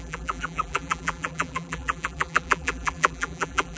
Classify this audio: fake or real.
fake